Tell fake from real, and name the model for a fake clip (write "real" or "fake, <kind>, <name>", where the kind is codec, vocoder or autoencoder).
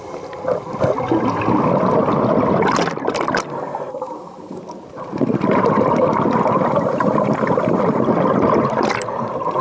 real